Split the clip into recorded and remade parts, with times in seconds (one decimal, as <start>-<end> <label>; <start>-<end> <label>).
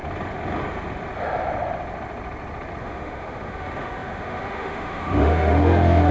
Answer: 0.0-2.8 recorded; 2.8-6.1 remade